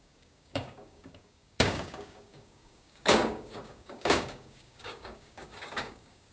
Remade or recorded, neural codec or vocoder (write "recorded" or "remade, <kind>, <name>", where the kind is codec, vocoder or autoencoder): remade, codec, DAC